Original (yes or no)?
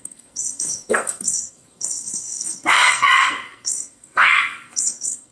no